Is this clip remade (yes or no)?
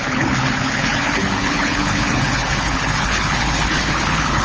yes